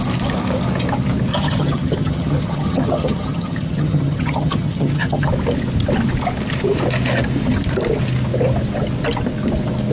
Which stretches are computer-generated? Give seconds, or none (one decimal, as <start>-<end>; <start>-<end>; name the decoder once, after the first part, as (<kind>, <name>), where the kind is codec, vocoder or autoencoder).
1.3-5.3 (vocoder, HiFi-GAN)